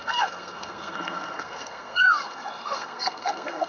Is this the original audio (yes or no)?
no